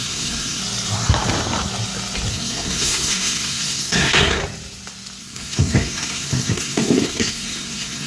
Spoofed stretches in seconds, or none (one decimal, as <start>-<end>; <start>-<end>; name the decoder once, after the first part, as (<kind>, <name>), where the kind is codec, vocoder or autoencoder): 0.0-0.6 (codec, SNAC); 2.3-4.4; 5.2-8.1